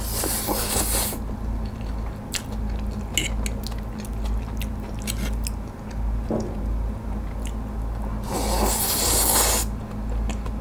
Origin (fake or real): real